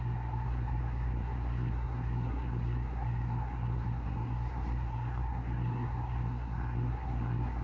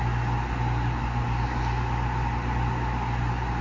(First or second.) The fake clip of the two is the first